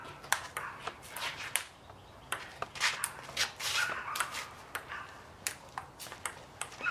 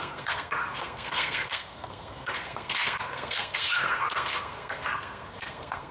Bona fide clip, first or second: first